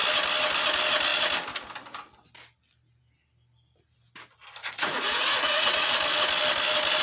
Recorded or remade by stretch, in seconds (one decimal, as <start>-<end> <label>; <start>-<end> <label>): 0.0-4.6 recorded; 4.6-5.9 remade; 5.9-7.0 recorded